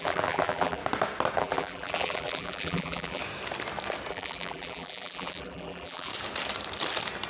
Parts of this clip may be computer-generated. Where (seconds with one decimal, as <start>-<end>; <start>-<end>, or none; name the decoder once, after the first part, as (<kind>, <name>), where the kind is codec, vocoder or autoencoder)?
0.0-0.8 (vocoder, BigVGAN v2); 1.4-3.2; 4.1-6.1